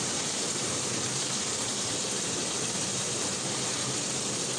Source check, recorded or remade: remade